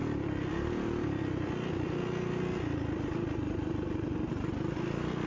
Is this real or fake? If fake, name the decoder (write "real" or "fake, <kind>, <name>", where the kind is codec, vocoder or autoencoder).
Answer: real